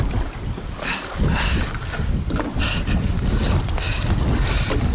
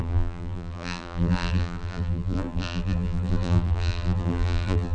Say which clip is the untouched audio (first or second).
first